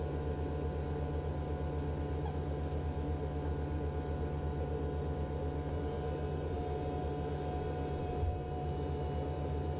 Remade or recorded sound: recorded